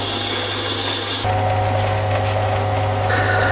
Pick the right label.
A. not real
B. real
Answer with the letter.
B